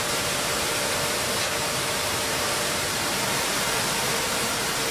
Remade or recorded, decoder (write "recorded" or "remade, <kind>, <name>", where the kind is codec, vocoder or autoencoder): remade, vocoder, BigVGAN v2